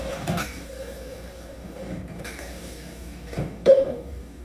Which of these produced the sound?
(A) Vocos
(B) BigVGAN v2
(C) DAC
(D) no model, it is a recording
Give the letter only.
C